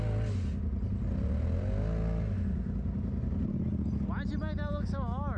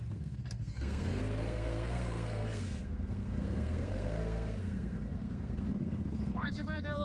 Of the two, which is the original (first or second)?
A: first